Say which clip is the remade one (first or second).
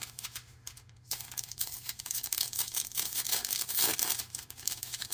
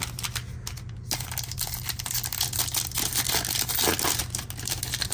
first